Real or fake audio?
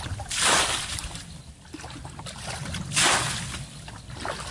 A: real